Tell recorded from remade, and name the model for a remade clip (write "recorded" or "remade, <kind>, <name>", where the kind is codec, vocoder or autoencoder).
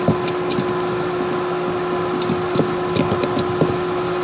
recorded